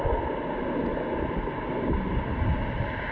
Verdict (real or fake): real